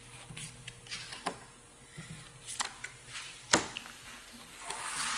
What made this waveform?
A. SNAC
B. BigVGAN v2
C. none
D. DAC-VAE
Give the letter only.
C